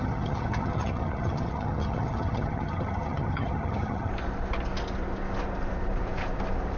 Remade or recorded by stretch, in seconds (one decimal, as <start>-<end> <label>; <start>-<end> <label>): 0.0-4.1 remade; 4.1-6.8 recorded